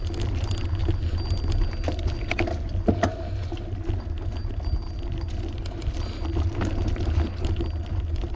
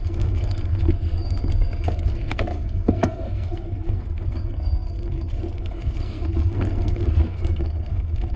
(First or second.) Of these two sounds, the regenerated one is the second